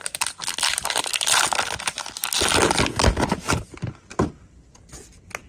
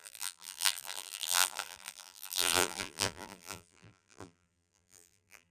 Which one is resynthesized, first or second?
second